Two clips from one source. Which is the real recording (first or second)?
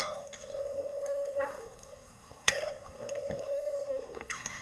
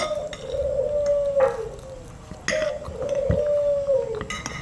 second